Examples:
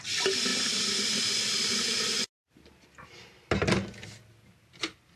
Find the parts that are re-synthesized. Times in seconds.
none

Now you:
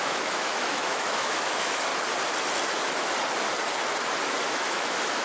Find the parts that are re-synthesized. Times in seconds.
0.0-1.9; 4.5-5.2

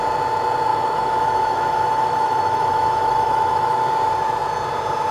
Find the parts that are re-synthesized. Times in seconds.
0.7-3.8

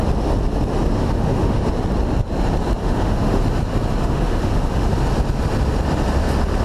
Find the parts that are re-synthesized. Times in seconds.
1.0-1.7; 2.8-3.4; 4.0-4.9

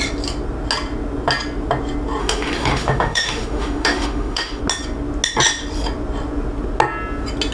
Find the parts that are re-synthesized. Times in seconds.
2.2-4.6

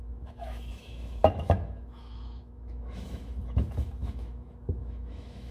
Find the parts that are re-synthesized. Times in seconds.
0.0-5.5